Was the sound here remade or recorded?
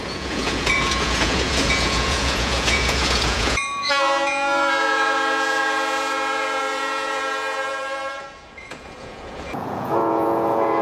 remade